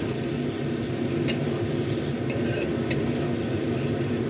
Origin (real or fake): real